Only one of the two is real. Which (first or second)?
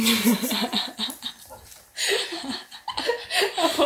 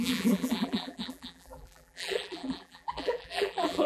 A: first